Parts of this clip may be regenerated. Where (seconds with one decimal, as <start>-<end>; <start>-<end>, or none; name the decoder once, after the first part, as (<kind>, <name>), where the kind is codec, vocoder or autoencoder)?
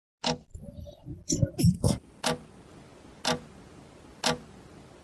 none